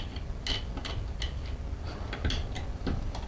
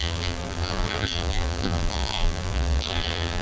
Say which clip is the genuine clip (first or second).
first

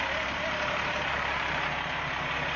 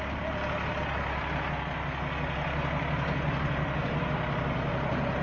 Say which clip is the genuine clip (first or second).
second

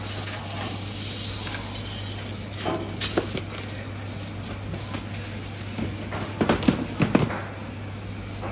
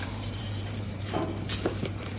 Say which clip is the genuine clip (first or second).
first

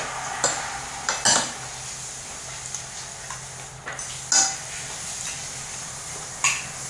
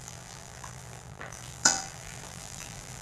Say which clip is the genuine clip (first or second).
first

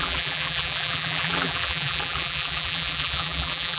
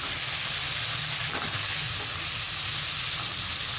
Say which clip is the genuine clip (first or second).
second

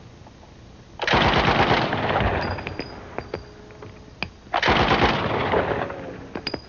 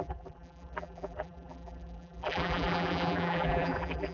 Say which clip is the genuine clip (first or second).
first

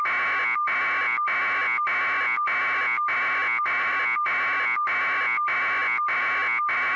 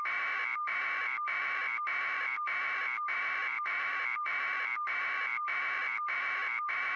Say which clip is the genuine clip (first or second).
first